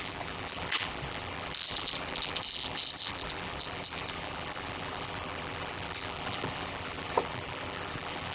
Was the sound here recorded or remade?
remade